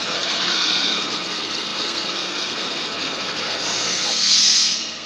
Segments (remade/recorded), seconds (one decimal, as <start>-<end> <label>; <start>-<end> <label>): 0.0-5.1 remade